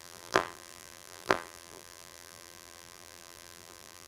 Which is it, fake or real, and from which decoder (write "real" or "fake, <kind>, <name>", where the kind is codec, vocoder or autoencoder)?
fake, vocoder, BigVGAN v2